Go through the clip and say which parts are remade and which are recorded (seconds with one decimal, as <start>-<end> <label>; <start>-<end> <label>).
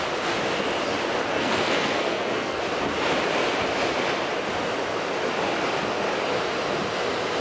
0.0-1.3 recorded; 1.3-2.6 remade; 2.6-7.4 recorded